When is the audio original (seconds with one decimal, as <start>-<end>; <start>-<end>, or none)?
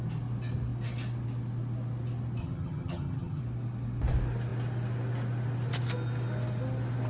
0.0-2.4; 3.4-7.1